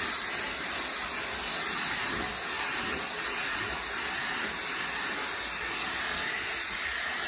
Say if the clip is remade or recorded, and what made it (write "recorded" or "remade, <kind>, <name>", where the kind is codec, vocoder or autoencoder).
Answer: recorded